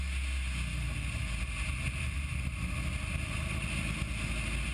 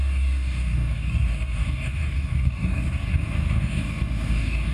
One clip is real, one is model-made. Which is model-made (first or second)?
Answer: second